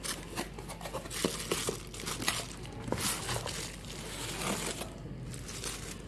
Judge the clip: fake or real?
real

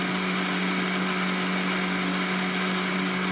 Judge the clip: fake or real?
real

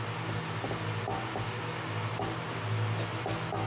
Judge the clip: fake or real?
real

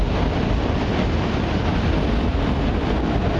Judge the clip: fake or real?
fake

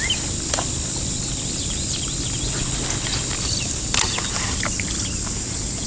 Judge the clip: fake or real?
real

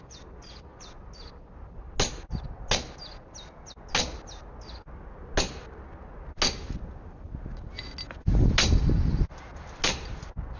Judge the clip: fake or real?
real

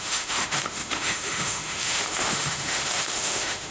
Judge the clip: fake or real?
fake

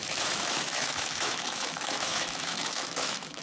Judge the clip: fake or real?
fake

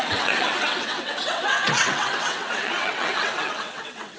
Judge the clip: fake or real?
fake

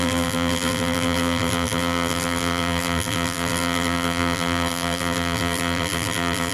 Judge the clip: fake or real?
fake